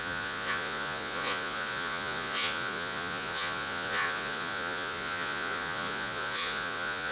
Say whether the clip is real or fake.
fake